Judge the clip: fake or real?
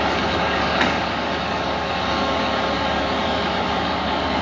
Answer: fake